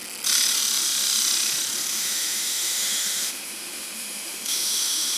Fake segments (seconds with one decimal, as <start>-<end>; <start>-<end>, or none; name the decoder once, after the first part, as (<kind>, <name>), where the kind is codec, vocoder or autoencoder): 1.9-5.2 (autoencoder, DAC-VAE)